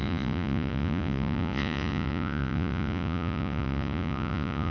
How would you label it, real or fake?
fake